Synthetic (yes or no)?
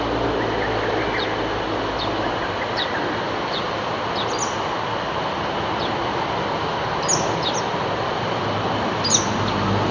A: no